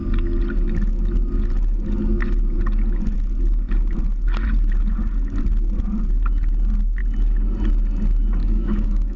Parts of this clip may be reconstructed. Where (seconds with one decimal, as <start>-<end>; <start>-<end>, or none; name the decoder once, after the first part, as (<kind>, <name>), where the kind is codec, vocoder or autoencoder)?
8.4-9.2 (autoencoder, DAC-VAE)